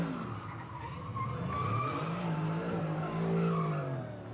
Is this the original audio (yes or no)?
yes